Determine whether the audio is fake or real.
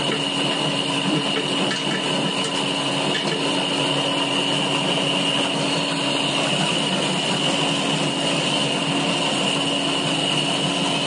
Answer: real